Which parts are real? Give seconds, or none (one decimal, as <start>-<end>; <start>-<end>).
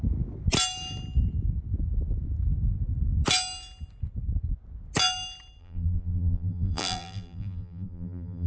0.0-5.6